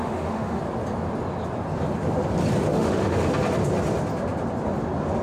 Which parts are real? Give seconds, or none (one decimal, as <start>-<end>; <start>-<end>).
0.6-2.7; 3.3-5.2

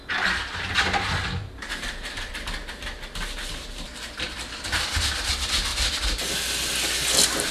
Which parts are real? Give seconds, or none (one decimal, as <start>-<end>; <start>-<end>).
0.0-1.4; 2.3-3.6; 4.6-7.5

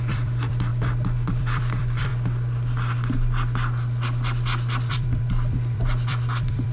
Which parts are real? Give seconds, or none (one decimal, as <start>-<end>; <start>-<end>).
0.7-1.3; 2.1-4.9

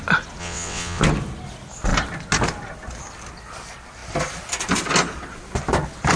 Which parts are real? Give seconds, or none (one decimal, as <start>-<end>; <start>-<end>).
0.0-0.4; 1.0-6.2